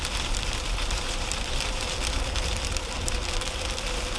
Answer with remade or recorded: remade